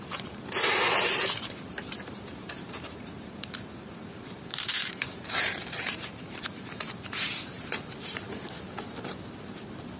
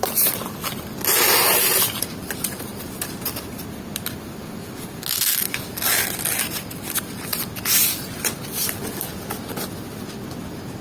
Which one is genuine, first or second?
second